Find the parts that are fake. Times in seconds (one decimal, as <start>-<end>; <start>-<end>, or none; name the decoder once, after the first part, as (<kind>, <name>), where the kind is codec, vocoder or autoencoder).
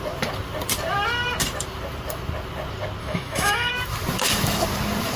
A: 3.0-3.7 (autoencoder, DAC-VAE)